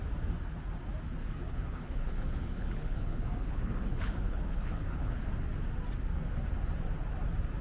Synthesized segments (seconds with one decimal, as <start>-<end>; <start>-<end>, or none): 1.2-5.2